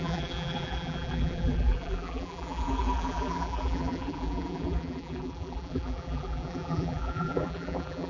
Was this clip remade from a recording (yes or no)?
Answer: yes